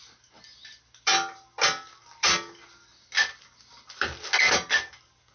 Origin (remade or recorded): recorded